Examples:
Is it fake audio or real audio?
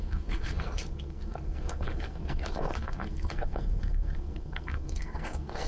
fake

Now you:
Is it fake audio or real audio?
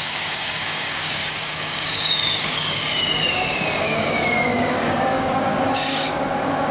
fake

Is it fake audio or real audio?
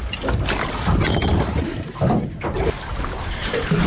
real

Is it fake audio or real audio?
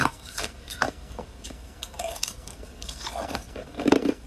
fake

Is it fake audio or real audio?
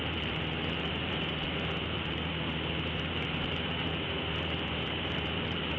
fake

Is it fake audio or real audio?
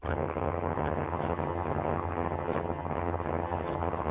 fake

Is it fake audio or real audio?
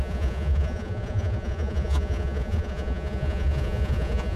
fake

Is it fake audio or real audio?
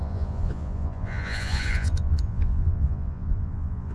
fake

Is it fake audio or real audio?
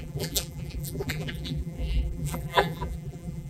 fake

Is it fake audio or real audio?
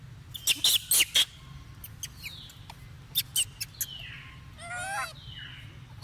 real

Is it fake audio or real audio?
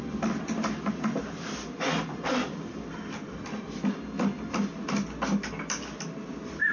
real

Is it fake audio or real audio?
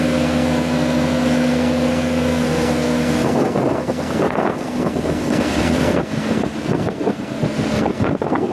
fake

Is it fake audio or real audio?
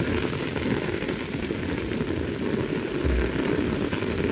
real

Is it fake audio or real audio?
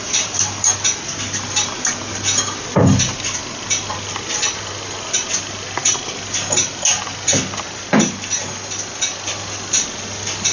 real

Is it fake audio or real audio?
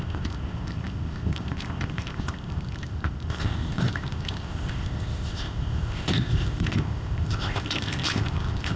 fake